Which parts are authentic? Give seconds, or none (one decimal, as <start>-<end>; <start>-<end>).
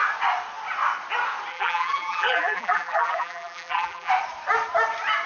0.0-1.5; 4.1-5.3